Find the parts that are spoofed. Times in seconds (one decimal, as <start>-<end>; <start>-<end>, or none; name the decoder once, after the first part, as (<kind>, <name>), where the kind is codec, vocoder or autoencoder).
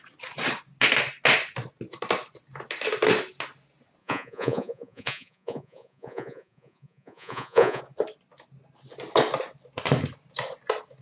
4.0-7.8 (vocoder, Vocos)